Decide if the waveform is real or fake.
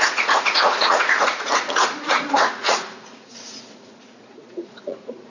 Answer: fake